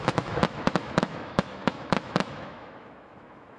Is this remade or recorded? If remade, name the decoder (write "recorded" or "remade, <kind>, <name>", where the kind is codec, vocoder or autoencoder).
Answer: remade, autoencoder, DAC-VAE